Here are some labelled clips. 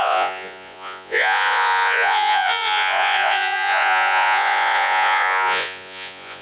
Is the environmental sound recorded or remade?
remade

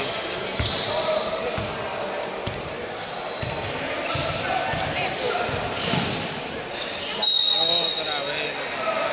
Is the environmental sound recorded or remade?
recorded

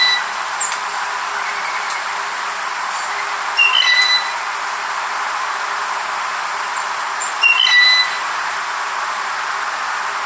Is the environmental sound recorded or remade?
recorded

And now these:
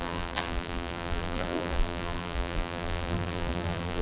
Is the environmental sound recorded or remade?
remade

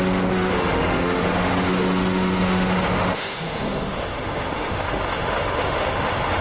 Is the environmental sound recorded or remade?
remade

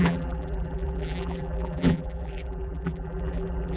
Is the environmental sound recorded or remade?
remade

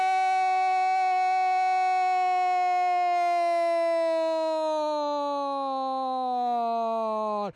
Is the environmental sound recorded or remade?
recorded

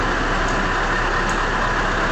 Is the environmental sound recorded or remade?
recorded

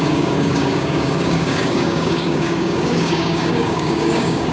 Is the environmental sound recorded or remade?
remade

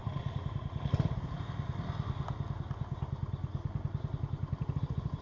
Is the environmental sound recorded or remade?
recorded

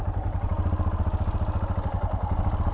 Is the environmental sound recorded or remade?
recorded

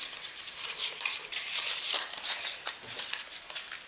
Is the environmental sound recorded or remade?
remade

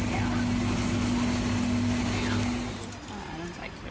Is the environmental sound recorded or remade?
recorded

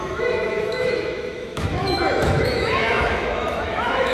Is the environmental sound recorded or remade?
remade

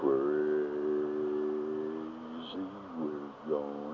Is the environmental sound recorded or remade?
recorded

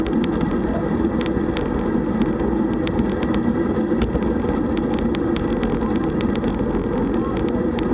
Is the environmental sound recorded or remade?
recorded